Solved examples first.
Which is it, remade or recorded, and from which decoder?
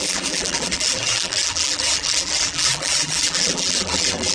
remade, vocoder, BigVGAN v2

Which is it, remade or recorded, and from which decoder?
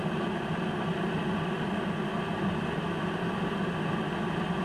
recorded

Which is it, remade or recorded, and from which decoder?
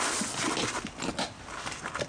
recorded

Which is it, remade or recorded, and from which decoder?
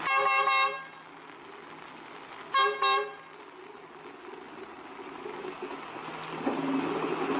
recorded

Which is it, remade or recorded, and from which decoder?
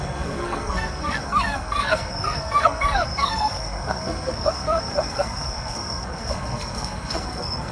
remade, codec, SNAC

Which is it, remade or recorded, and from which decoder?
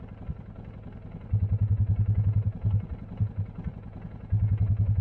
recorded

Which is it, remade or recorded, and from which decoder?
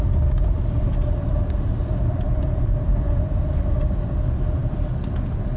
remade, vocoder, BigVGAN v2